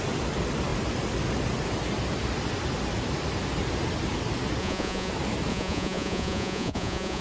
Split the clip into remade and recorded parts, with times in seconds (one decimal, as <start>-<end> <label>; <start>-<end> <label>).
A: 0.0-4.6 recorded; 4.6-5.1 remade; 5.1-5.5 recorded; 5.5-7.2 remade